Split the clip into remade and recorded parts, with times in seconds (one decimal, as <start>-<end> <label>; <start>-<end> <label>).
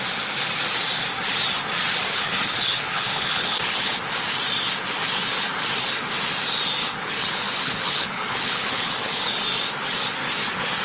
0.0-2.1 recorded; 2.1-4.0 remade; 4.0-6.8 recorded; 6.8-9.3 remade; 9.3-10.8 recorded